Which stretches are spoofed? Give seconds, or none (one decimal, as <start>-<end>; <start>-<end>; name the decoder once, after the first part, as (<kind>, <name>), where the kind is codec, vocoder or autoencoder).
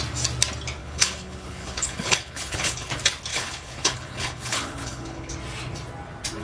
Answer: 0.8-2.9 (codec, HILCodec); 3.3-5.3